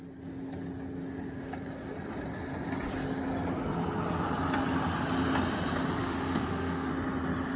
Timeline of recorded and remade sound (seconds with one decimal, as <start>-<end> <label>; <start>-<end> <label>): 0.0-6.0 recorded; 6.0-6.9 remade; 6.9-7.6 recorded